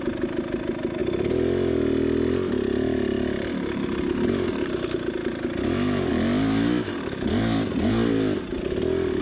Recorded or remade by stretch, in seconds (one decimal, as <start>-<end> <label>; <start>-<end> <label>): 0.0-9.2 recorded